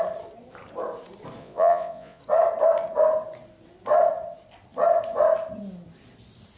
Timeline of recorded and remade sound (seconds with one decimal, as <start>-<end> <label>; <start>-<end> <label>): 0.0-1.4 recorded; 1.4-2.2 remade; 2.2-6.6 recorded